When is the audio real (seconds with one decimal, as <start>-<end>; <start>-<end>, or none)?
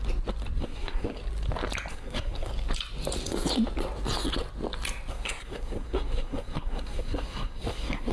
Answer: 0.0-0.6; 1.2-1.9; 2.5-5.1